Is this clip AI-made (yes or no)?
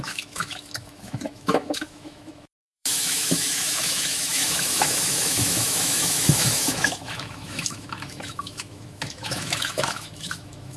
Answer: yes